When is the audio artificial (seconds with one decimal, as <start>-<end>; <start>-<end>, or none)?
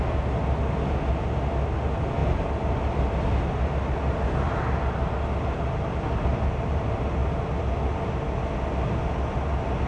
none